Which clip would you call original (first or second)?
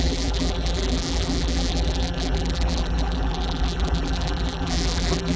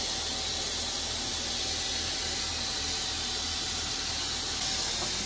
second